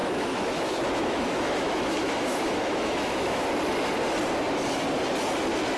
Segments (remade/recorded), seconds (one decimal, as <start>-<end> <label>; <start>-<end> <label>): 0.0-3.4 remade; 3.4-5.8 recorded